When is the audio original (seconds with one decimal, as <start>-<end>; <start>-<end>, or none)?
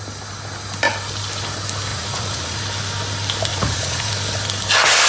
0.0-1.9; 2.6-3.5; 4.1-5.1